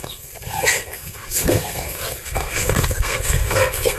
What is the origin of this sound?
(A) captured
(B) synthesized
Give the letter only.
B